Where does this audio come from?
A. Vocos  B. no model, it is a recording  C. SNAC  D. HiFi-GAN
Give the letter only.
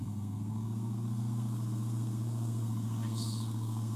C